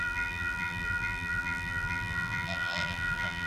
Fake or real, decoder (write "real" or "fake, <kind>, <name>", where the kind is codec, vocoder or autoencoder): fake, vocoder, BigVGAN v2